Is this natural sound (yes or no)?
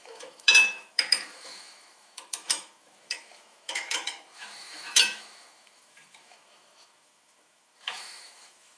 no